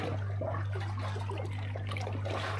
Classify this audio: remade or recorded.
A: recorded